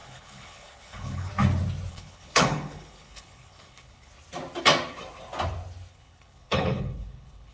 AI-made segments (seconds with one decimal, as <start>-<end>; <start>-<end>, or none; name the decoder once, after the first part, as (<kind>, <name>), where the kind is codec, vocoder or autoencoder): 0.0-1.3 (codec, HILCodec); 1.9-4.1; 5.9-7.5